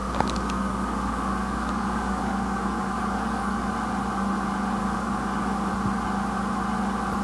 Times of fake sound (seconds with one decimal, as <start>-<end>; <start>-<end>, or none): 0.0-3.7; 4.8-5.7